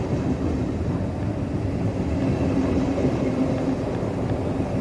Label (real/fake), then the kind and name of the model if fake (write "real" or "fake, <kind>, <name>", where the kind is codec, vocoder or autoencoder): real